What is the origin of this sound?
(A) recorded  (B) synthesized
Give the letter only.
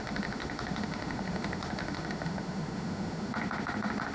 B